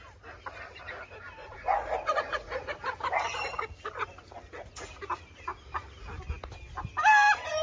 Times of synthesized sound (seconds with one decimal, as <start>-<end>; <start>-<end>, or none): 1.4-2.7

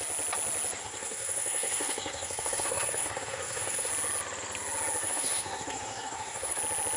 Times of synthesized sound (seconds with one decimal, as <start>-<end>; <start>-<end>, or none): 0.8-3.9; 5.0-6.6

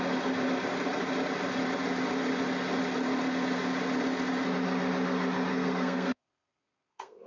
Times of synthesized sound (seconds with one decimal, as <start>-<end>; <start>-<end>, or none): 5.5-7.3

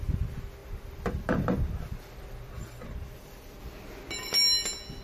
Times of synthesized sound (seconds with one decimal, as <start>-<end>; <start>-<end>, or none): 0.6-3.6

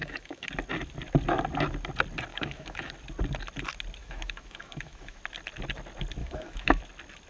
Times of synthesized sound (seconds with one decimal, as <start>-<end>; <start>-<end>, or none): 0.0-0.5; 2.3-2.9; 4.0-5.2; 6.2-6.8

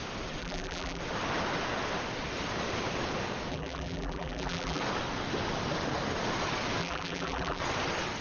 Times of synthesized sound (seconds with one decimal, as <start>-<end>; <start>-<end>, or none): 0.4-1.0; 3.5-4.8; 6.8-7.6

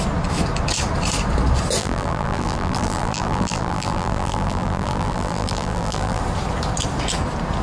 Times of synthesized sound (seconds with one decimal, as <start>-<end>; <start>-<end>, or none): 1.8-6.2